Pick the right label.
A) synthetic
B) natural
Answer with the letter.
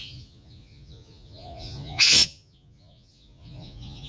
A